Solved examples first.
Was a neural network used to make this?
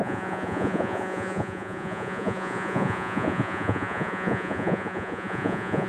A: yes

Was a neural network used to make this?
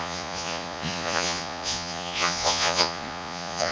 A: yes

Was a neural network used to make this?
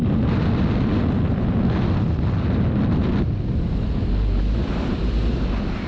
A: no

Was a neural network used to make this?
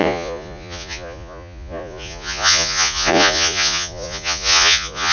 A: yes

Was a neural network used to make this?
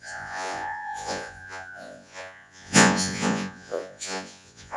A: yes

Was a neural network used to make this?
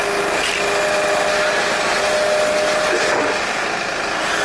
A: no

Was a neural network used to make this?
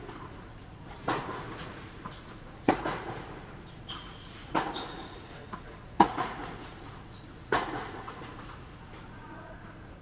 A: yes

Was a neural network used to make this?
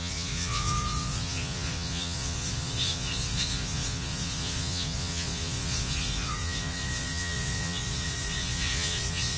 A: yes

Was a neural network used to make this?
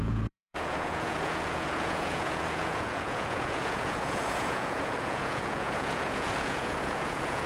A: yes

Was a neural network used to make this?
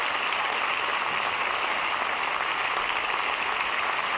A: no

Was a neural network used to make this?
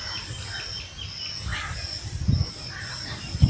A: no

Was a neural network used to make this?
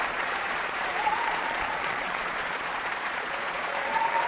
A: yes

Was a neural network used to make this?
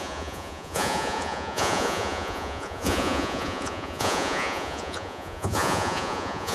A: yes